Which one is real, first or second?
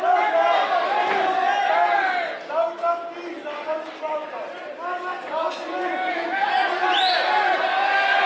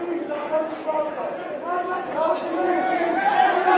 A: first